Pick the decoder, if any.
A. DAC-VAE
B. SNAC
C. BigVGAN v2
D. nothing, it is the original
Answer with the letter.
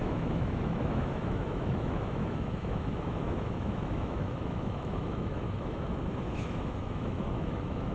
A